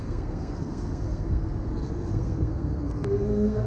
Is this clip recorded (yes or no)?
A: no